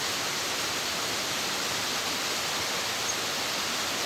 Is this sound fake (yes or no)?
no